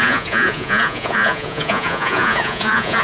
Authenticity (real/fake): fake